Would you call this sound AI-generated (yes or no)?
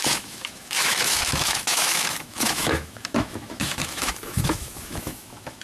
yes